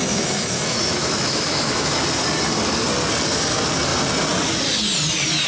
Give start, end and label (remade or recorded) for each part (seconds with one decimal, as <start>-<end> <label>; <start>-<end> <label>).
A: 0.0-2.0 remade; 2.0-5.5 recorded